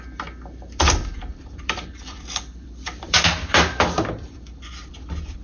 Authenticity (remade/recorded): remade